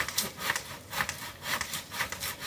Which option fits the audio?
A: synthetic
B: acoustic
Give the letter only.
A